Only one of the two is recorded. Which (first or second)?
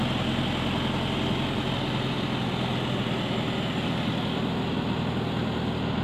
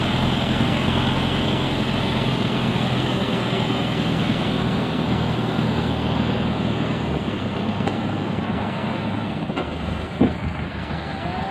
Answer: first